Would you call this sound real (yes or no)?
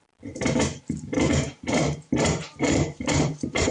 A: no